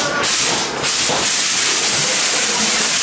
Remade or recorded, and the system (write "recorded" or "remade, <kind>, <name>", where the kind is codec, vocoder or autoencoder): recorded